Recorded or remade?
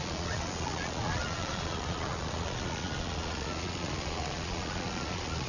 remade